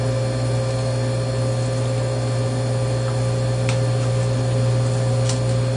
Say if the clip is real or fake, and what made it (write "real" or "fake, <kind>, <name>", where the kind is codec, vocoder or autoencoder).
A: real